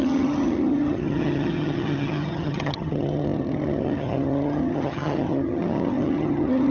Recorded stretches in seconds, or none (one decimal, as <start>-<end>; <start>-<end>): none